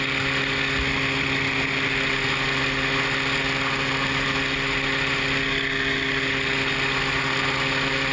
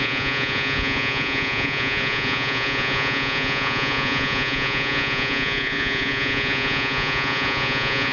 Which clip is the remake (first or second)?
second